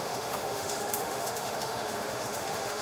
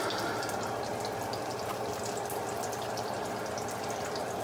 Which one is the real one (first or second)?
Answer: second